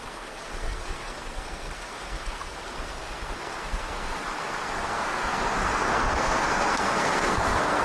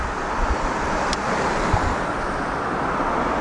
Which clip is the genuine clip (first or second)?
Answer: second